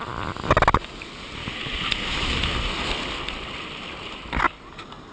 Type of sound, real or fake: real